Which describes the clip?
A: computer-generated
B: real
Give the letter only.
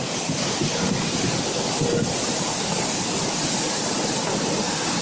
B